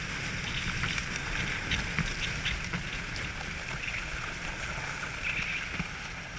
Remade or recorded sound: recorded